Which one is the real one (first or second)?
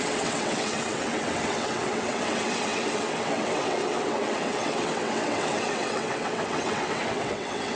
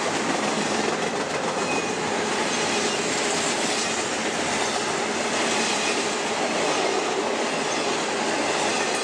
second